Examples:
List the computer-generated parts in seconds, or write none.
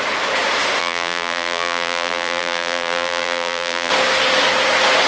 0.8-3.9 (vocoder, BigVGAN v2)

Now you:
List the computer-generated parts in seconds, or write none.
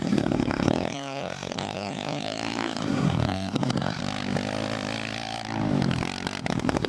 0.0-4.0 (codec, SNAC); 6.5-6.9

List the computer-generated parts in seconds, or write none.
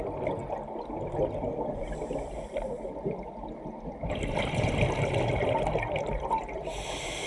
none